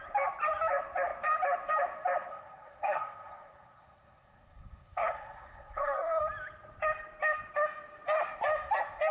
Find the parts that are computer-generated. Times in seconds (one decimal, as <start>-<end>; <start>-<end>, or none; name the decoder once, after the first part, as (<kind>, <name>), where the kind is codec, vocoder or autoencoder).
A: 2.3-6.2 (codec, SNAC)